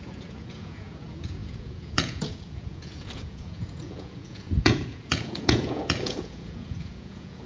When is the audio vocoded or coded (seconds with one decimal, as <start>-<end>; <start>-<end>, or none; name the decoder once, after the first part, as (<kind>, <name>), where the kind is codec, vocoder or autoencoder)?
0.0-7.5 (vocoder, Vocos)